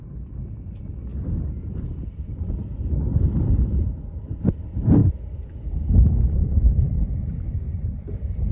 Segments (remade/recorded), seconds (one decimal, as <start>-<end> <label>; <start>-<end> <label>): 0.0-8.5 remade